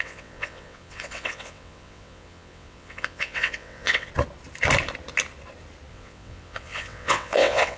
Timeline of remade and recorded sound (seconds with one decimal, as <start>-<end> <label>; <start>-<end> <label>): 0.0-4.1 remade; 4.1-5.9 recorded; 5.9-7.8 remade